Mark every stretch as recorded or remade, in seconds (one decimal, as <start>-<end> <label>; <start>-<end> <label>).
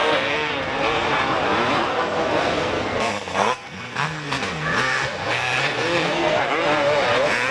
0.0-0.5 remade; 0.5-1.9 recorded; 1.9-6.4 remade; 6.4-7.5 recorded